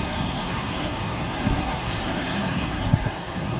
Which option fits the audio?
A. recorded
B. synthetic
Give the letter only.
B